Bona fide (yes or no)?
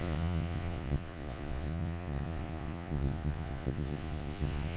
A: no